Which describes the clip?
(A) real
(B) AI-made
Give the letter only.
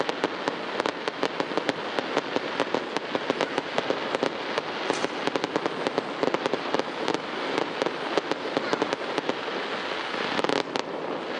A